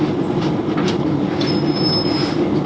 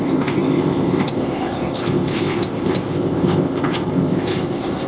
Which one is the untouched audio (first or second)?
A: first